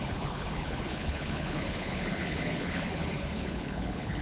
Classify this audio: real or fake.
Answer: fake